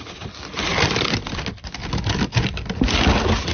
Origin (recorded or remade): recorded